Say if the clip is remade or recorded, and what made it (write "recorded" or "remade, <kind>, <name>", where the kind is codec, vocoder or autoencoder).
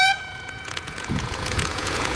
remade, vocoder, Vocos